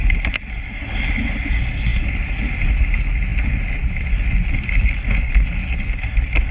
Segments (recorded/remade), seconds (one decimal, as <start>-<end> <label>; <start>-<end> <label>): 0.0-6.5 recorded